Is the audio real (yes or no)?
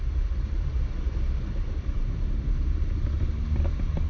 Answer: no